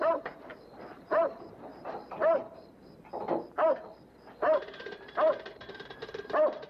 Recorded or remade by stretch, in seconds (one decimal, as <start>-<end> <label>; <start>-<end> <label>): 0.0-1.7 remade; 1.7-5.7 recorded; 5.7-6.7 remade